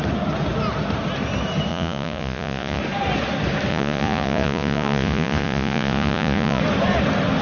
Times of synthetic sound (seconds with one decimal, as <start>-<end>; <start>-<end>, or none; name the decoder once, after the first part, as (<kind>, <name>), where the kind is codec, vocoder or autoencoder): 1.7-2.8 (vocoder, Vocos); 3.7-6.6